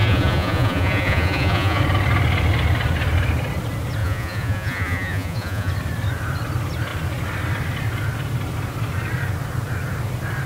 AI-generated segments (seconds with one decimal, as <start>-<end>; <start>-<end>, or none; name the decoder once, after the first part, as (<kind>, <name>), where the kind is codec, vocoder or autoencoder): 0.0-1.8 (vocoder, Vocos); 4.0-5.7